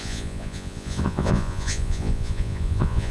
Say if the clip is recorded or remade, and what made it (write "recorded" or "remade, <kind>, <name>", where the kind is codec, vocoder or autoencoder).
remade, vocoder, Vocos